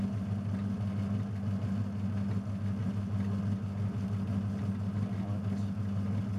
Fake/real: real